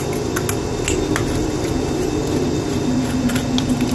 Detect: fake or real real